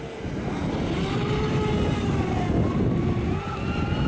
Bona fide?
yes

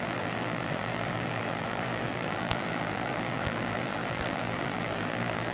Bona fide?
no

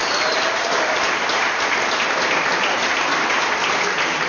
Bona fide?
no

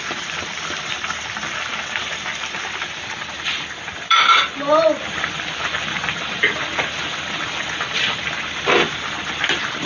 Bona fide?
no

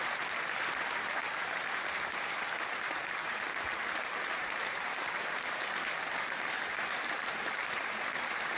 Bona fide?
no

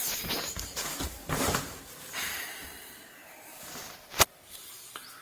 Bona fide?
no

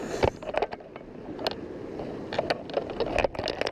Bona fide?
yes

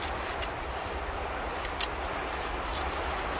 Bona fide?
yes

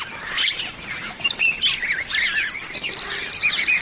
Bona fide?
yes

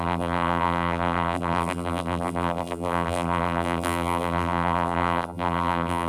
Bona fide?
no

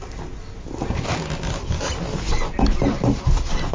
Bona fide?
yes